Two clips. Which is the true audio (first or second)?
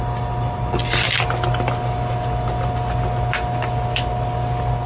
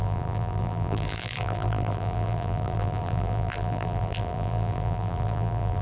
first